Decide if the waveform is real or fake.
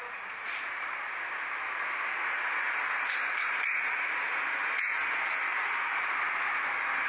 real